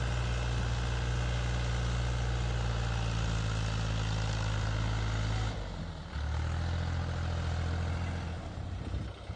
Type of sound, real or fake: real